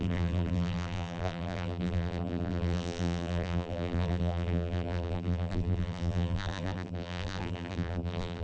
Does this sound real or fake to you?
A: fake